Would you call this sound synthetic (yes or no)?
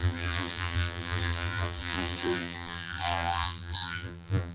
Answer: yes